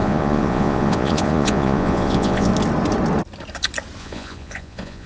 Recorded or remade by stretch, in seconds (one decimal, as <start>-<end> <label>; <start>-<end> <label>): 0.0-2.5 remade; 2.5-4.0 recorded; 4.0-5.1 remade